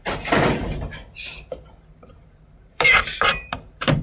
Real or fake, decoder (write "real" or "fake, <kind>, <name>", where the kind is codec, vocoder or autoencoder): fake, vocoder, BigVGAN v2